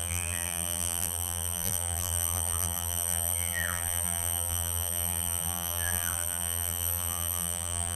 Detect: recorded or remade remade